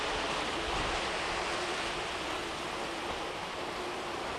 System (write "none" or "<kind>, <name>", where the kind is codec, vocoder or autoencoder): none